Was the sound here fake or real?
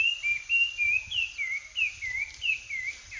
real